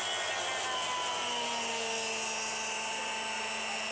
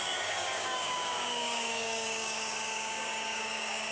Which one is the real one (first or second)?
first